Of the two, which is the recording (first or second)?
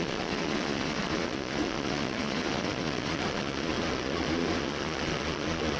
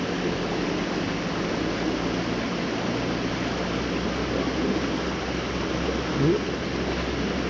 second